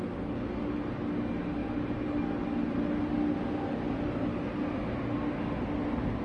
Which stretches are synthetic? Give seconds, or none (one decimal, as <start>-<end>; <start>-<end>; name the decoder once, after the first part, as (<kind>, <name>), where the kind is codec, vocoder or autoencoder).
1.6-2.2 (vocoder, BigVGAN v2)